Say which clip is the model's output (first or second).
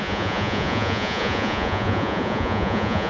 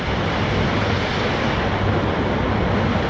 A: first